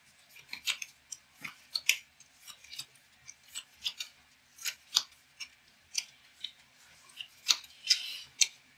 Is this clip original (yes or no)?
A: yes